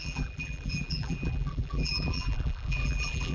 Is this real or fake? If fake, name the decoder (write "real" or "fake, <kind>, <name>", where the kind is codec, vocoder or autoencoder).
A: fake, vocoder, BigVGAN v2